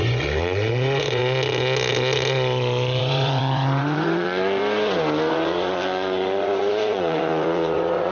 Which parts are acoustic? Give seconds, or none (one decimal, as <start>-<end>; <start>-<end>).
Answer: 1.2-3.0; 4.6-5.3